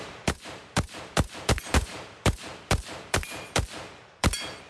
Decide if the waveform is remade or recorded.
remade